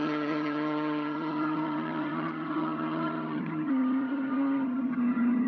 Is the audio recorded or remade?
remade